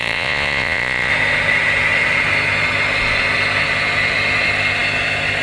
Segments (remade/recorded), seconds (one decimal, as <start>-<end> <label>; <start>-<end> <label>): 0.0-1.1 remade; 1.1-5.4 recorded